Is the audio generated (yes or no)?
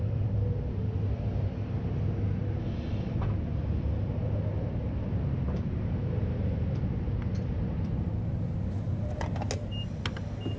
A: no